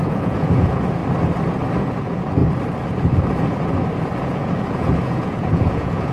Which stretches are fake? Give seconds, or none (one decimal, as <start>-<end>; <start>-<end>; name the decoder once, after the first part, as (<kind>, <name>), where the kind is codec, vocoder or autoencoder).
0.0-1.0 (vocoder, Vocos); 1.8-2.4; 4.2-6.1